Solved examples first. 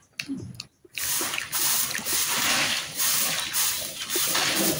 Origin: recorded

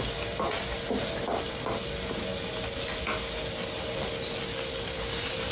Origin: recorded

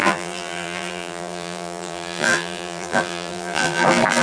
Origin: remade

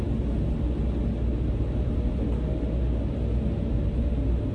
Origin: recorded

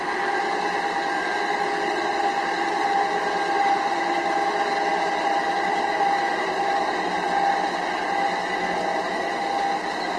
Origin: recorded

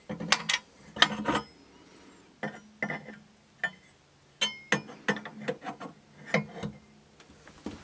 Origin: recorded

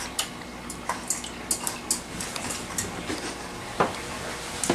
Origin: recorded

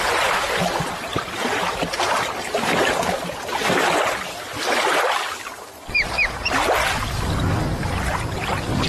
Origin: remade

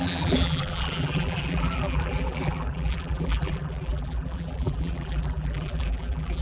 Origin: remade